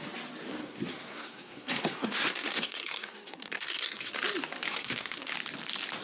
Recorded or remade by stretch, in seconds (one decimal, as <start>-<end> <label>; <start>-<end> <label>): 0.0-0.5 recorded; 0.5-4.1 remade; 4.1-4.7 recorded; 4.7-5.3 remade; 5.3-6.0 recorded